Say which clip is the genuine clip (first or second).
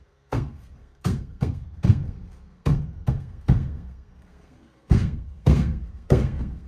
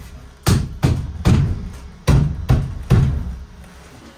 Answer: second